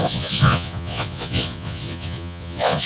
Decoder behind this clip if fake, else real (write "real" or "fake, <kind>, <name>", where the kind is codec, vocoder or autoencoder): fake, vocoder, Vocos